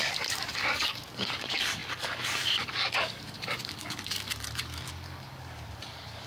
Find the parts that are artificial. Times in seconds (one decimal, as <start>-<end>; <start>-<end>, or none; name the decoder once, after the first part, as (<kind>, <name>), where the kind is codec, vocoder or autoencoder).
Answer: 0.0-6.3 (codec, DAC)